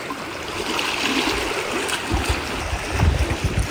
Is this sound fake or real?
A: real